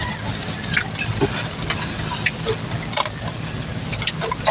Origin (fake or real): real